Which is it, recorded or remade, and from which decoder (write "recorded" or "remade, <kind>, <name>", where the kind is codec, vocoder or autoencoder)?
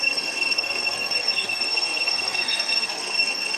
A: remade, codec, SNAC